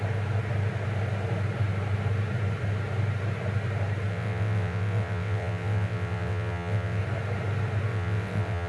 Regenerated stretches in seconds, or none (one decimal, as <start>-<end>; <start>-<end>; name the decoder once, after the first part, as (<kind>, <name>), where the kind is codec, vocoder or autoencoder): 4.1-7.0 (vocoder, WaveNeXt); 7.9-8.7